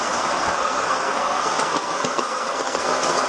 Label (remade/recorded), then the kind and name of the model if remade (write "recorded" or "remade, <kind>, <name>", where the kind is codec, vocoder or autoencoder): remade, codec, SNAC